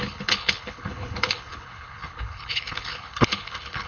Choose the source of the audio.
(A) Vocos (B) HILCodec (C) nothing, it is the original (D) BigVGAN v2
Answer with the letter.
B